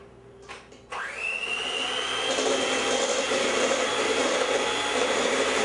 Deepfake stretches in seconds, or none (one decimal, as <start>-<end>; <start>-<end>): 0.0-1.4; 3.2-5.6